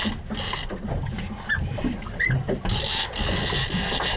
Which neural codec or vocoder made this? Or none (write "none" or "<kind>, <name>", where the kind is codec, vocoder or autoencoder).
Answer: none